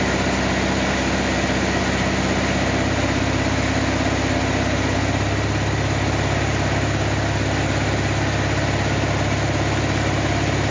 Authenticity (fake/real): real